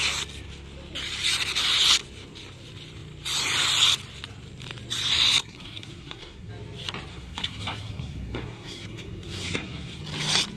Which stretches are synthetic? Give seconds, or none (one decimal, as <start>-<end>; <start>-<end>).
5.4-6.5; 7.1-10.0